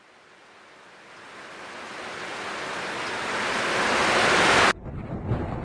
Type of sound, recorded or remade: recorded